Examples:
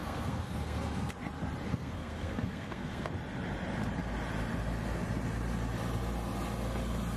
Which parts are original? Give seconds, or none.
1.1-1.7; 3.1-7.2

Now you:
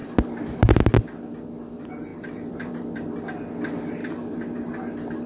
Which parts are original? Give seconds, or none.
0.8-2.1; 3.1-4.0; 4.7-5.3

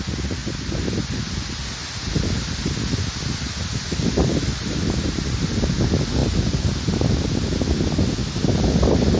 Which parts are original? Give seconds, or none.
0.0-9.2

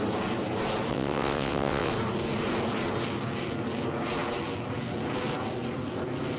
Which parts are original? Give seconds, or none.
0.0-0.9; 1.9-6.4

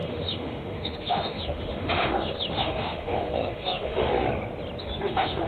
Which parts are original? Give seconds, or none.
4.1-4.8